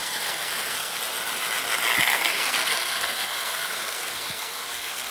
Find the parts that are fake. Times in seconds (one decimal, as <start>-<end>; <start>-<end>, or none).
0.0-1.0; 2.0-5.1